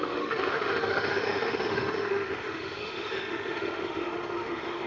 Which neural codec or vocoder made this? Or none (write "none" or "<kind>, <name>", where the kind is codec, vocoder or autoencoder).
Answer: autoencoder, DAC-VAE